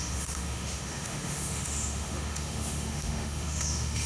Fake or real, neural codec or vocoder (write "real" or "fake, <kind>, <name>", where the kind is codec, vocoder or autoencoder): fake, autoencoder, DAC-VAE